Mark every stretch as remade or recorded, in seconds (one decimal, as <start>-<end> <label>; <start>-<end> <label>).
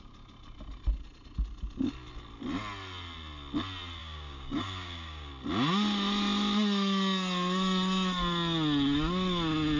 0.0-4.0 recorded; 4.0-5.3 remade; 5.3-9.8 recorded